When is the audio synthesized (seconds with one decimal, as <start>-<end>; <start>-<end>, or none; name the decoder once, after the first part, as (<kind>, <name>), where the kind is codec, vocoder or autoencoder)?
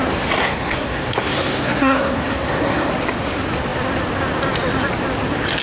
0.4-2.9 (codec, SNAC)